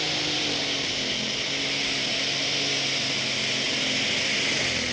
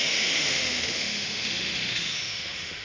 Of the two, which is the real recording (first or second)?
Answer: first